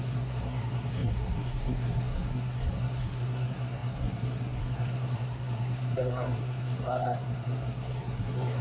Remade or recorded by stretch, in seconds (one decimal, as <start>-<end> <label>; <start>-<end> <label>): 0.0-8.6 remade